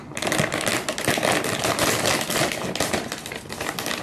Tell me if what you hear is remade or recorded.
recorded